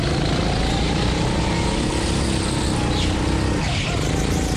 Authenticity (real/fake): real